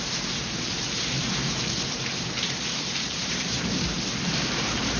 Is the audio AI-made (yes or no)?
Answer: yes